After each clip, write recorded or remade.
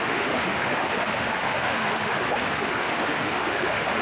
remade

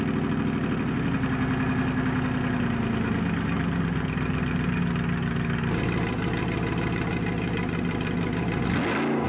recorded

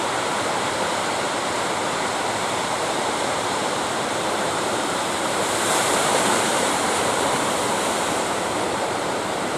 remade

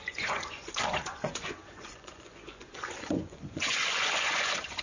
remade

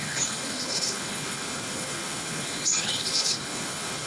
remade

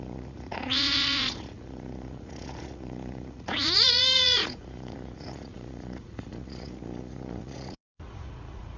remade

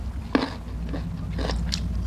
recorded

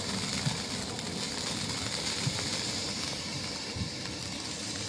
recorded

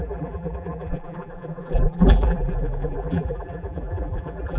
remade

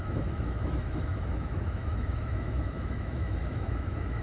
remade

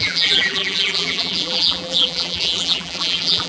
remade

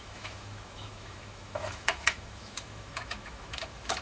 remade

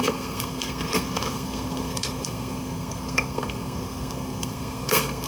remade